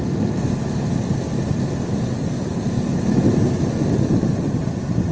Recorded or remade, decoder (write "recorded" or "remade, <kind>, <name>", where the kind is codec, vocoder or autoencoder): recorded